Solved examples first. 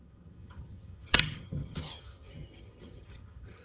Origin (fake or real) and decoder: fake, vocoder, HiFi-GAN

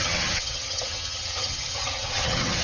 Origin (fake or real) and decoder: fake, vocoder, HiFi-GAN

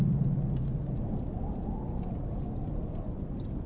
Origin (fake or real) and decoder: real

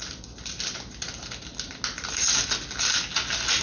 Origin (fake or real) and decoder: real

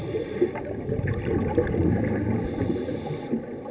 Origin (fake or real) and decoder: real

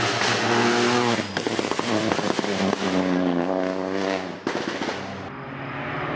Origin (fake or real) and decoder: real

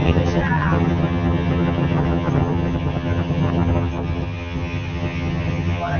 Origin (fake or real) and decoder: fake, vocoder, HiFi-GAN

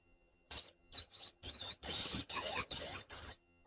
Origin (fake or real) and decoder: fake, vocoder, HiFi-GAN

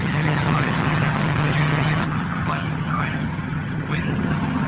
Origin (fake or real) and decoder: fake, vocoder, HiFi-GAN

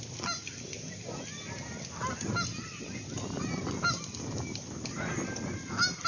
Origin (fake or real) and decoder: real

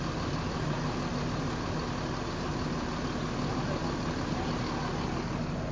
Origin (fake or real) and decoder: real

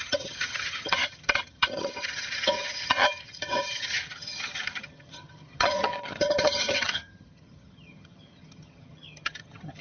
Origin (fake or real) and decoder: fake, vocoder, HiFi-GAN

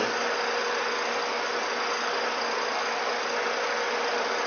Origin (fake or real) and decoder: real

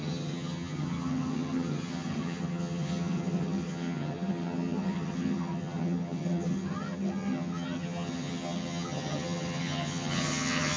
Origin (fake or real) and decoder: fake, vocoder, HiFi-GAN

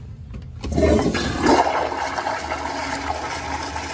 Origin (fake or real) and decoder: real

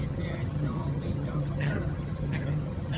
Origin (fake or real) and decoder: fake, vocoder, HiFi-GAN